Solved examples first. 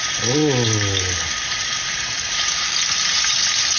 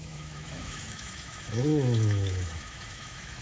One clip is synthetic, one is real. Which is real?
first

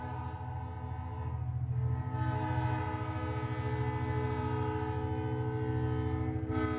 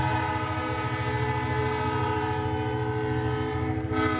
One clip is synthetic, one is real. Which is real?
first